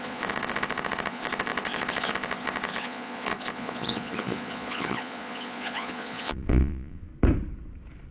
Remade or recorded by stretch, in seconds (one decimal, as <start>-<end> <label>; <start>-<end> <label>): 0.0-7.1 remade; 7.1-8.1 recorded